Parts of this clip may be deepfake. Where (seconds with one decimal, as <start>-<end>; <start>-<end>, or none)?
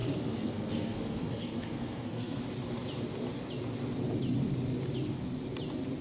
0.0-2.4